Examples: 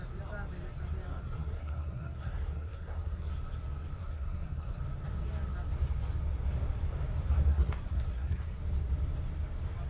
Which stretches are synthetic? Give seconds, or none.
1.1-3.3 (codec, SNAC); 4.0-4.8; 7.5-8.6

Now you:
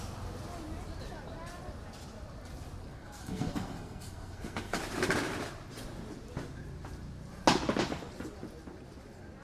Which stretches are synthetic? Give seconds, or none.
2.8-4.8 (codec, SNAC)